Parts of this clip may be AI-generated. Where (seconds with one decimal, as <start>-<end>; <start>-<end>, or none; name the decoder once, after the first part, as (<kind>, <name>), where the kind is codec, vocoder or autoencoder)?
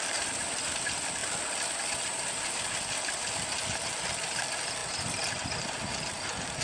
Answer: none